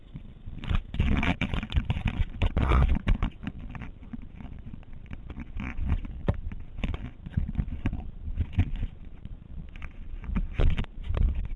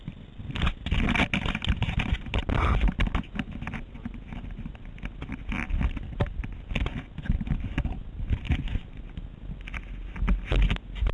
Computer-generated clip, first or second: first